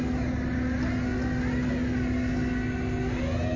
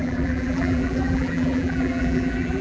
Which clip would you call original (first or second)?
first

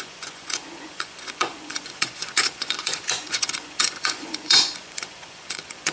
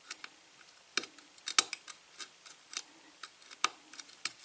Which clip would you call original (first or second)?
second